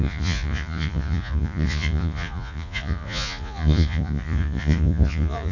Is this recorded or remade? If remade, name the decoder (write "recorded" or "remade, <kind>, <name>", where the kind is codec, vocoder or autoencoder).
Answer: remade, vocoder, Vocos